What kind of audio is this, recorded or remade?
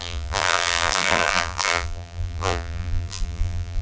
remade